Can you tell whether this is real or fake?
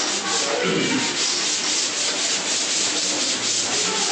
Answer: real